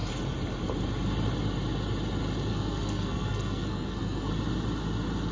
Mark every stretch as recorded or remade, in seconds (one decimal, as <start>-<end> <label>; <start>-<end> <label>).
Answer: 0.0-2.5 recorded; 2.5-4.3 remade; 4.3-5.3 recorded